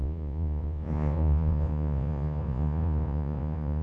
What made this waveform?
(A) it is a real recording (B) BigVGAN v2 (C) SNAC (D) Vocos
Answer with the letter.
D